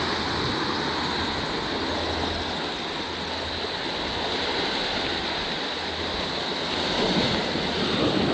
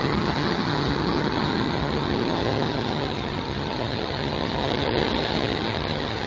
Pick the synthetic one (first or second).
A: second